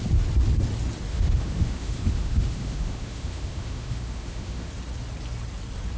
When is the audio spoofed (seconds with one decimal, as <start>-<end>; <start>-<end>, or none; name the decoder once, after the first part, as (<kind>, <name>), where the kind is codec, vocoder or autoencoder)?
1.1-4.7 (autoencoder, DAC-VAE)